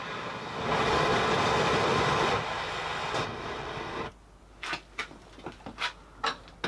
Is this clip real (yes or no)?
yes